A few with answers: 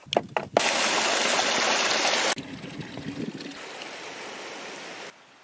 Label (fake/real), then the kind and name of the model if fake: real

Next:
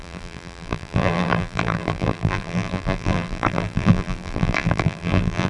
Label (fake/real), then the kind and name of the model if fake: fake, vocoder, BigVGAN v2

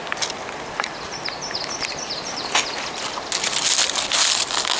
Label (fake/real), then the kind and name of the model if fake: real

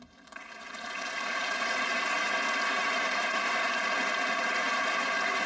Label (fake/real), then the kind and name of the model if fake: real